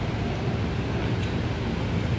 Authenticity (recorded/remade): recorded